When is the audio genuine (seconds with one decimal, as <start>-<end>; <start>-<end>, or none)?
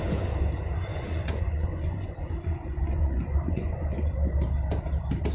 0.0-0.9; 4.1-5.3